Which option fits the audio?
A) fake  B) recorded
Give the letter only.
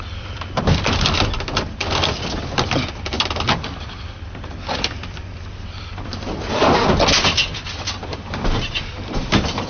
A